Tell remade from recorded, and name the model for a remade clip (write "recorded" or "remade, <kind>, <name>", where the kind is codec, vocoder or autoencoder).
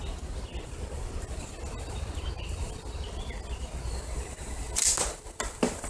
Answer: recorded